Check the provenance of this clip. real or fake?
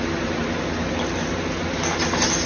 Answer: real